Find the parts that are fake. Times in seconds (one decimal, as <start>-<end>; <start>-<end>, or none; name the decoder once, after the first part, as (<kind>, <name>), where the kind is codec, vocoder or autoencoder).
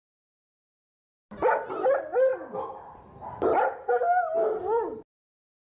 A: 2.3-3.9 (vocoder, BigVGAN v2)